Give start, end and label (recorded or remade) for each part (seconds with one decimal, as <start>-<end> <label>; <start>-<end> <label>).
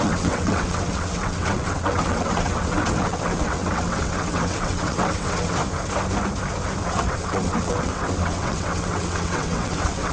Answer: 0.0-5.6 remade; 5.6-6.8 recorded; 6.8-10.1 remade